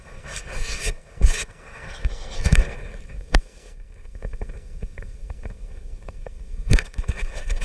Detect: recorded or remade remade